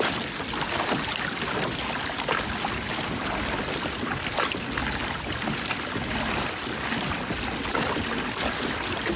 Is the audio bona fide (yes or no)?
yes